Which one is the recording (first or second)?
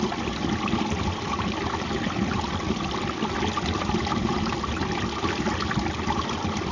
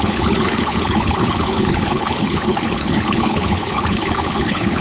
first